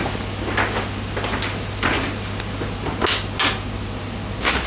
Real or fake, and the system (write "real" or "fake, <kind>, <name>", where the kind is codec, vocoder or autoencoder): real